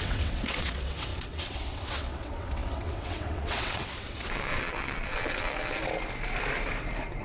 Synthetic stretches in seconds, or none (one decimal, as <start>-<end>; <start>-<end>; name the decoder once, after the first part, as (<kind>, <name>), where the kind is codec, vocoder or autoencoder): 0.0-5.8 (vocoder, WaveNeXt)